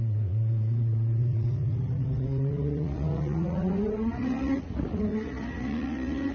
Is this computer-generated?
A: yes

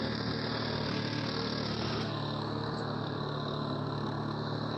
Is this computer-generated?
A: yes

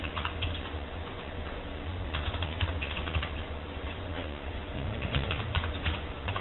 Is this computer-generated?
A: yes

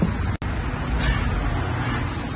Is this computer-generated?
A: no